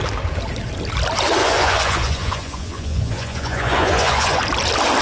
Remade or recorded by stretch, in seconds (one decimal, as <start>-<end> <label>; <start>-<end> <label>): 0.0-1.4 recorded; 1.4-4.4 remade; 4.4-5.0 recorded